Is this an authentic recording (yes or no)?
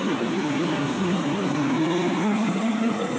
no